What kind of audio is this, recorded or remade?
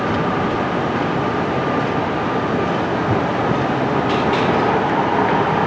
recorded